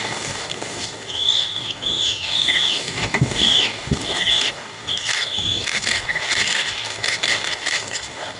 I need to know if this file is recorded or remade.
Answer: remade